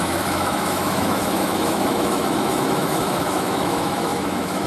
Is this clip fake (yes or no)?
yes